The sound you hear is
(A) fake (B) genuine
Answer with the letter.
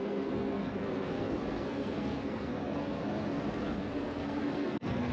A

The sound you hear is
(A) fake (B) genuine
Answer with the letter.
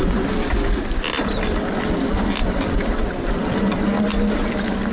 B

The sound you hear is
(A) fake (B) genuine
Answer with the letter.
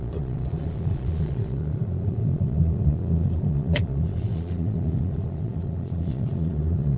A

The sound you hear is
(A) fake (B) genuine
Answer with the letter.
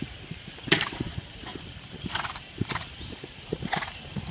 A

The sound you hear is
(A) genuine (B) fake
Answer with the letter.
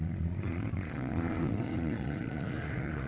B